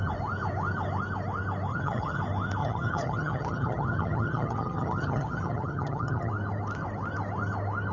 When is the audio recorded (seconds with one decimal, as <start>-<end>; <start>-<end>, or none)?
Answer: 0.0-1.7; 2.2-2.6; 6.3-7.9